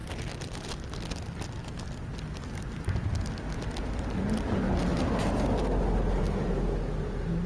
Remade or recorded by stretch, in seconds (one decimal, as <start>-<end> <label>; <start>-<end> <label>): 0.0-7.5 recorded

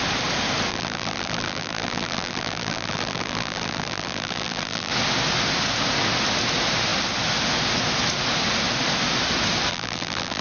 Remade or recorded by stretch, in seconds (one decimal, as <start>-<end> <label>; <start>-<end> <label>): 0.0-0.7 recorded; 0.7-4.9 remade; 4.9-9.7 recorded; 9.7-10.4 remade